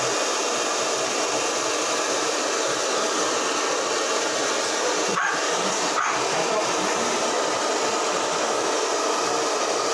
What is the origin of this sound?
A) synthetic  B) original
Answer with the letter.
B